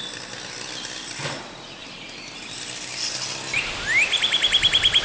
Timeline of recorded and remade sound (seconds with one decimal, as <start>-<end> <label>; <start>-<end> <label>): 0.0-1.8 recorded; 1.8-3.6 remade; 3.6-5.0 recorded